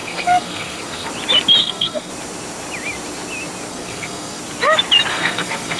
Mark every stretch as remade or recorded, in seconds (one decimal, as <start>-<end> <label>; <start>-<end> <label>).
0.0-1.1 remade; 1.1-1.6 recorded; 1.6-2.1 remade; 2.1-3.7 recorded; 3.7-4.4 remade; 4.4-5.1 recorded; 5.1-5.8 remade